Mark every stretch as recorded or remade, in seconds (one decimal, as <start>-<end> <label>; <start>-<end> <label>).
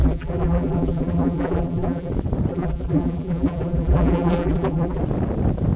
0.0-2.1 remade; 2.1-2.5 recorded; 2.5-5.0 remade; 5.0-5.8 recorded